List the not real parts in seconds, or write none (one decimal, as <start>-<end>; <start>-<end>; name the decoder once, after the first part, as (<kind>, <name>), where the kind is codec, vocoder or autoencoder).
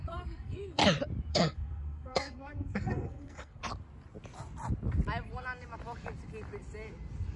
0.0-0.8 (codec, SNAC); 1.3-3.6